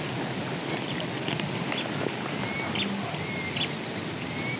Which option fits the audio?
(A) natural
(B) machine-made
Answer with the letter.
A